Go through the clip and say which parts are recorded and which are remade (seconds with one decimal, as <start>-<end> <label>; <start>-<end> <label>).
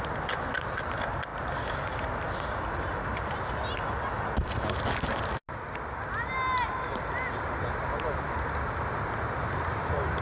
0.0-9.4 recorded; 9.4-10.2 remade